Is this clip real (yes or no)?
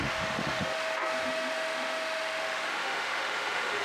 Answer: no